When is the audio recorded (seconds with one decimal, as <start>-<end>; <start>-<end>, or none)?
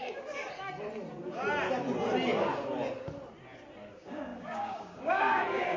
0.4-3.9